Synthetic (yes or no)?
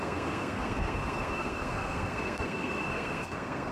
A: yes